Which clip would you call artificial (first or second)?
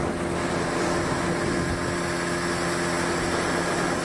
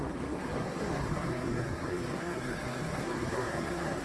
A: second